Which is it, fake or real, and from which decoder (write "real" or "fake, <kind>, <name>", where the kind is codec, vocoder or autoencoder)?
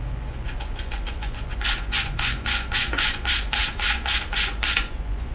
fake, vocoder, Vocos